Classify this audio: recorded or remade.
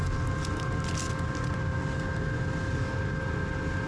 recorded